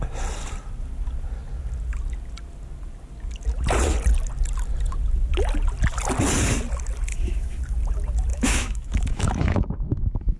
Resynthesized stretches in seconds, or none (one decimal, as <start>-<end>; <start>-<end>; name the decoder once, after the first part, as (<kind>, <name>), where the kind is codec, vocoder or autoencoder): 7.1-7.6 (autoencoder, DAC-VAE); 8.3-10.4